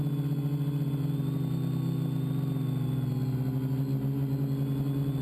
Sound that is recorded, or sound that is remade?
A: recorded